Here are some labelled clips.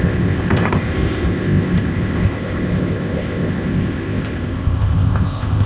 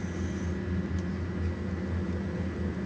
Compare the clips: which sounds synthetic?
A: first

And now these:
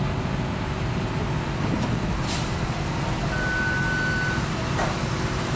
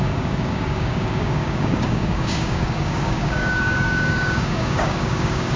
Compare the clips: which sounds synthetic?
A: second